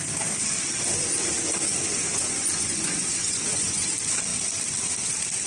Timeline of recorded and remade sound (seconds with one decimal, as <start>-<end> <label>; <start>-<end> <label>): 0.0-2.0 recorded; 2.0-3.9 remade; 3.9-5.5 recorded